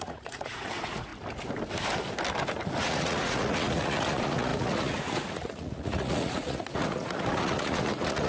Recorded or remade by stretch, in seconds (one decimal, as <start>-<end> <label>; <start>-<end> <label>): 0.0-1.1 remade; 1.1-2.8 recorded; 2.8-8.3 remade